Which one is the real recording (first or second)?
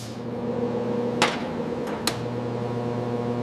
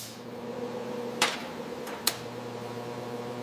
first